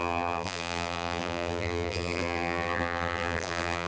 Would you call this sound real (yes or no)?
no